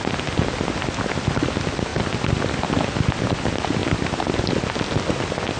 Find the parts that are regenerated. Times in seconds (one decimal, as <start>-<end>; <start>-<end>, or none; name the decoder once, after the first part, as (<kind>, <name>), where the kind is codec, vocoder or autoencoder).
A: 3.8-4.4 (vocoder, BigVGAN v2)